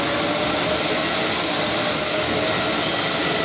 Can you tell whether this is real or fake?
real